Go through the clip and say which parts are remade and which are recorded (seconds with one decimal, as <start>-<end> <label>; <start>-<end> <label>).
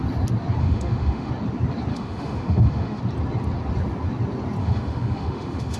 0.0-0.6 recorded; 0.6-1.3 remade; 1.3-1.9 recorded; 1.9-3.0 remade; 3.0-4.6 recorded; 4.6-5.8 remade